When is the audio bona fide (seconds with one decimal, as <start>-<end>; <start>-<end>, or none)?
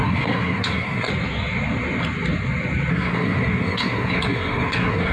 1.1-2.9